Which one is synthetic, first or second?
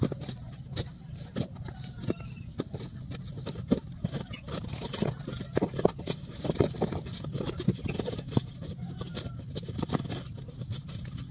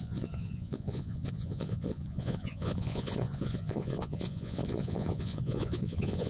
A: second